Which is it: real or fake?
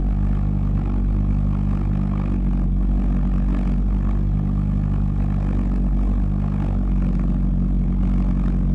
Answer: real